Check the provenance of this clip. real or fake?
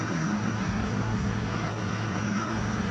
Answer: fake